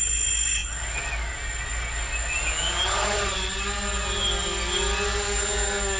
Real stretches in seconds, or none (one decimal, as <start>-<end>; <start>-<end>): 0.0-6.0